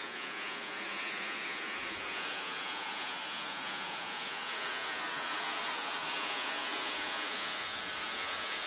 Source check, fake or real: fake